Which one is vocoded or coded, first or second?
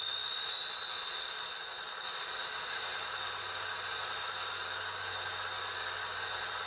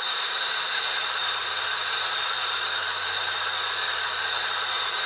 second